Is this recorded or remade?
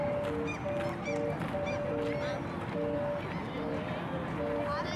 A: recorded